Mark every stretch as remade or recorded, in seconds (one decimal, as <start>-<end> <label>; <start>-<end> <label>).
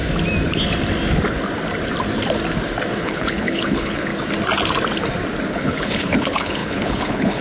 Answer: 0.0-2.9 recorded; 2.9-4.1 remade; 4.1-5.5 recorded; 5.5-7.4 remade